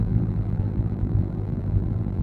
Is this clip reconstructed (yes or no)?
yes